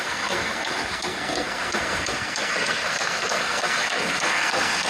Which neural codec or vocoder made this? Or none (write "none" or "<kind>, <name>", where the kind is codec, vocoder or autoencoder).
codec, SNAC